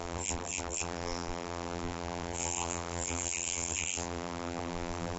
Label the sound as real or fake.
fake